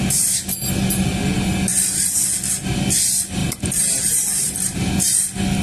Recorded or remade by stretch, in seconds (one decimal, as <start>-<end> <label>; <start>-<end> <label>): 0.0-3.4 recorded; 3.4-4.9 remade; 4.9-5.6 recorded